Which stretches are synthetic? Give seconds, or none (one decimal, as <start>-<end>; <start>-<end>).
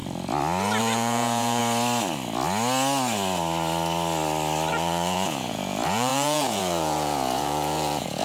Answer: 0.8-1.6; 4.7-8.2